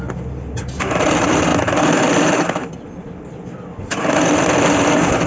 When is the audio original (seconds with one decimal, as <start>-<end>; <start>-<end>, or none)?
0.0-5.3